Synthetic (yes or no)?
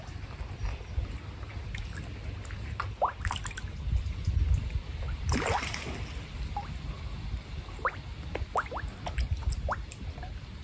no